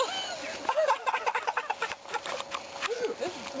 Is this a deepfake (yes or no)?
no